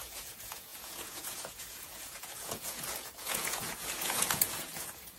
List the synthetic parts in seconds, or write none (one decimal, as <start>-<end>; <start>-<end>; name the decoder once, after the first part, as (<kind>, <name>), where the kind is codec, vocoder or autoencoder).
0.0-5.2 (vocoder, Vocos)